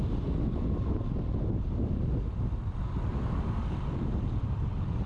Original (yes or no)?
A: yes